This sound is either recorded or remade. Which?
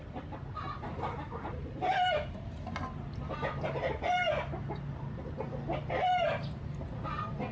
recorded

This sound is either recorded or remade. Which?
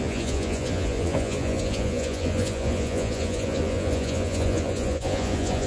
remade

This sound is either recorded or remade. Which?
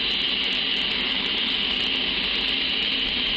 recorded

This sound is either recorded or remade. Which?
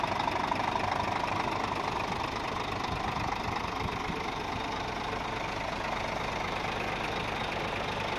recorded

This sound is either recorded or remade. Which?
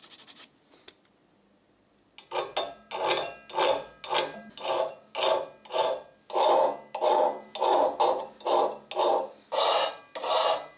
recorded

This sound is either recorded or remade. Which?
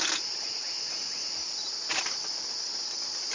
recorded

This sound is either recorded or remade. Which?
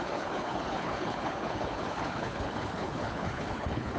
remade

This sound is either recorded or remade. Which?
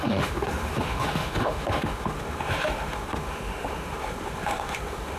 remade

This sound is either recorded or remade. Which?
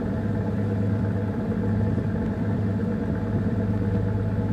remade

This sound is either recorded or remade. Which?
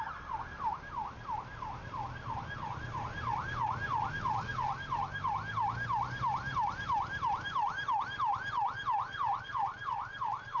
recorded